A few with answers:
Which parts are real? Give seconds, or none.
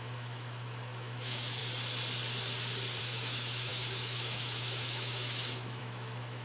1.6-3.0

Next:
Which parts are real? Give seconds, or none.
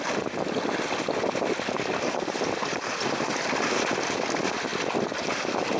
0.0-5.8